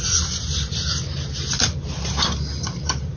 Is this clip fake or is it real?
real